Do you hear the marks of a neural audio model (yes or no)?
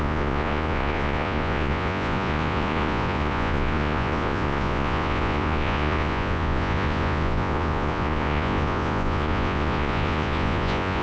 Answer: yes